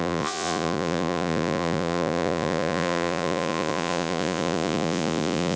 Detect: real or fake fake